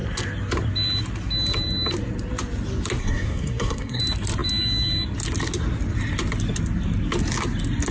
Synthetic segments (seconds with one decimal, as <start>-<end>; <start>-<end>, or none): 3.0-4.0